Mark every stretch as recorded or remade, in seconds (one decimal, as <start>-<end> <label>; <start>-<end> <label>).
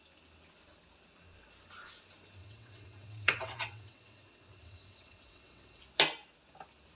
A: 0.0-2.4 recorded; 2.4-5.8 remade; 5.8-7.0 recorded